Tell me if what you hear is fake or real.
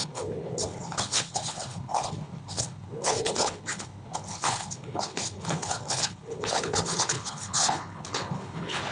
fake